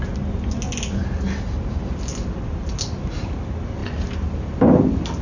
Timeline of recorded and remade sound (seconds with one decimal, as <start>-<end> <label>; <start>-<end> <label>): 0.0-5.2 recorded